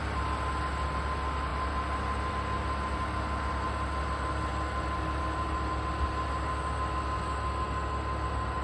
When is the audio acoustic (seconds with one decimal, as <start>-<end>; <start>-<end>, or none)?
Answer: 0.0-4.5; 5.2-8.6